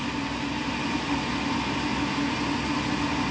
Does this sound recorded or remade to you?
recorded